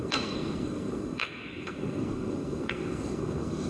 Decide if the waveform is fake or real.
fake